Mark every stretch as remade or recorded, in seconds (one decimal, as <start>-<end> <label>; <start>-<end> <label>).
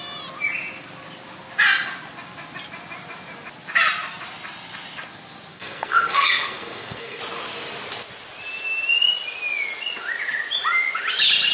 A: 0.0-5.5 recorded; 5.5-7.2 remade; 7.2-11.5 recorded